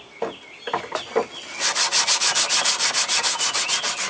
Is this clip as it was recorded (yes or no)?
yes